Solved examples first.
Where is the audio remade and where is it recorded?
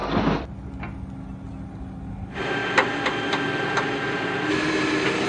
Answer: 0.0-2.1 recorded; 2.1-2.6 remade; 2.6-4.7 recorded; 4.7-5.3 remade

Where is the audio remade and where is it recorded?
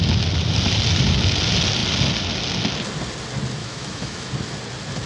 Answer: 0.0-3.6 recorded; 3.6-4.3 remade; 4.3-5.1 recorded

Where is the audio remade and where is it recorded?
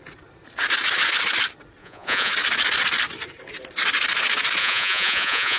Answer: 0.0-1.8 recorded; 1.8-2.3 remade; 2.3-4.6 recorded; 4.6-5.6 remade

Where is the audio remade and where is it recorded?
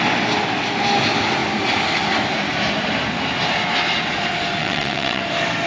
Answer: 0.0-4.6 recorded; 4.6-5.2 remade; 5.2-5.7 recorded